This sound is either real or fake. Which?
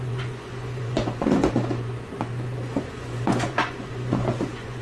fake